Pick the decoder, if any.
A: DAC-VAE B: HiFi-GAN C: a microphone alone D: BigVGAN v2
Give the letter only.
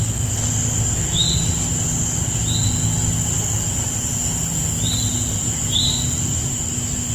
C